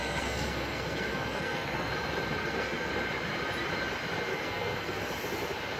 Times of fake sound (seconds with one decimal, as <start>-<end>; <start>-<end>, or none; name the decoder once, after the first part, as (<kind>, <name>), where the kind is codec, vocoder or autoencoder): 0.0-1.9 (codec, SNAC); 2.4-2.9; 4.3-5.0